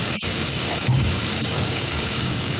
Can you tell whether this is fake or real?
fake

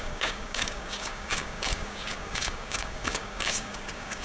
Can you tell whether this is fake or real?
fake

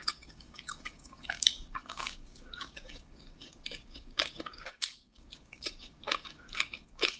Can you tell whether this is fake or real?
fake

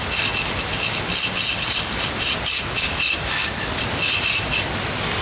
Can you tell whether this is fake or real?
real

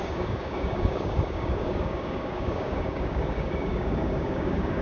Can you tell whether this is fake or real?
fake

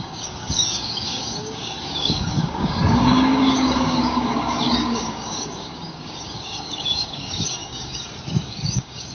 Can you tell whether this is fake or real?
fake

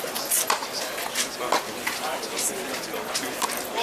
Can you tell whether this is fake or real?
real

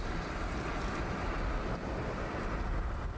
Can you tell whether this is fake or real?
real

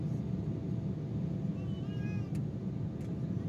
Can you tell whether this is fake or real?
real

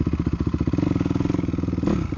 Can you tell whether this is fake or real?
real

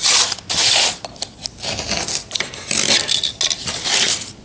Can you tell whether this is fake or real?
real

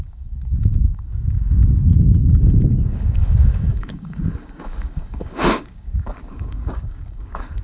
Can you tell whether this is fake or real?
fake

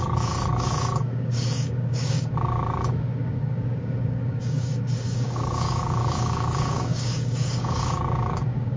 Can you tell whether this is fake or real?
fake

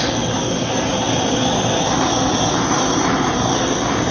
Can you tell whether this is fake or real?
real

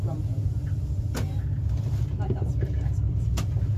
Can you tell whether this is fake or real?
real